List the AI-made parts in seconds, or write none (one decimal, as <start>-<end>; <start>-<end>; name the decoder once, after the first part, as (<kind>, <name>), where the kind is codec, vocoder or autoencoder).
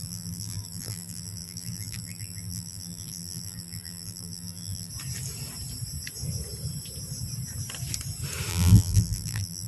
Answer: 0.0-4.9 (vocoder, BigVGAN v2); 8.5-9.7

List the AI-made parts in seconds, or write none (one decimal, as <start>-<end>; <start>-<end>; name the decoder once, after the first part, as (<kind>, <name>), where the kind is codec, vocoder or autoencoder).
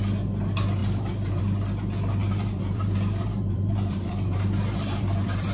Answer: 0.8-1.4 (vocoder, BigVGAN v2); 2.2-5.5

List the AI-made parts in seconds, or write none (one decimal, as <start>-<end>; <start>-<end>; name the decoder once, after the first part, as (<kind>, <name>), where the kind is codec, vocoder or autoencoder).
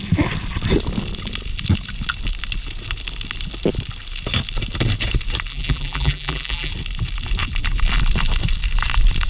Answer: 5.5-6.7 (vocoder, BigVGAN v2)